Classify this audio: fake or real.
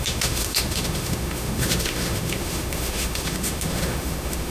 fake